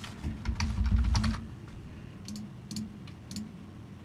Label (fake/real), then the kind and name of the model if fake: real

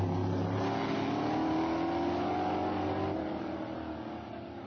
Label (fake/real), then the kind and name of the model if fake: real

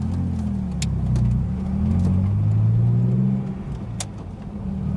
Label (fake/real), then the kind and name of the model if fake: real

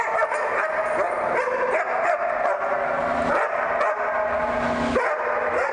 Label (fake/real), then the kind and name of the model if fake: real